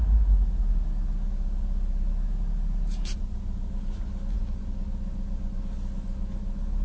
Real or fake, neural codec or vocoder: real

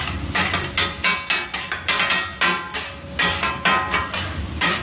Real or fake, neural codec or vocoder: real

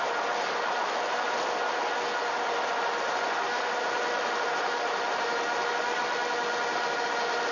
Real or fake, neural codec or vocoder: real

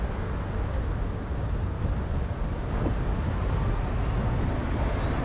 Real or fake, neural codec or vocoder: real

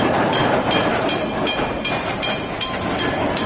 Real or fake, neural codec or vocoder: fake, vocoder, BigVGAN v2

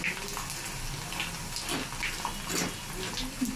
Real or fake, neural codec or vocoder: real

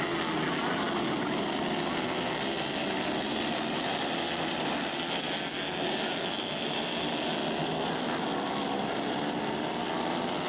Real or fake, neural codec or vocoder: real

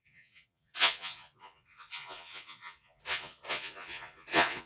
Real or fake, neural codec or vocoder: fake, vocoder, Vocos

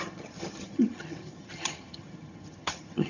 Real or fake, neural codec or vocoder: fake, vocoder, HiFi-GAN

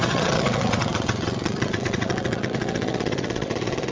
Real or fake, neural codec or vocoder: fake, vocoder, WaveNeXt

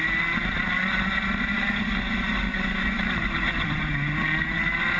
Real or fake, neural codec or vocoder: real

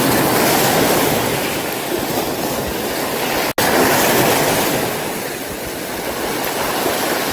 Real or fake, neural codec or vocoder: real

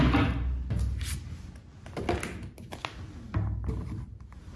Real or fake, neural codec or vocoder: real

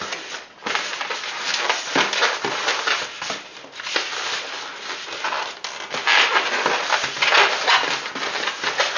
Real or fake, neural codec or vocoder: real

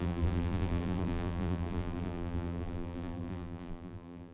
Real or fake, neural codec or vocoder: fake, vocoder, BigVGAN v2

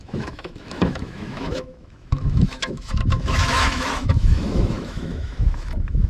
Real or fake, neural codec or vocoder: fake, autoencoder, DAC-VAE